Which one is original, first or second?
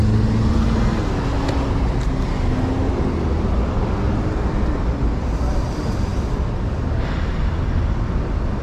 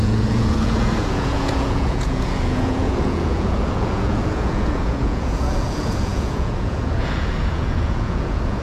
first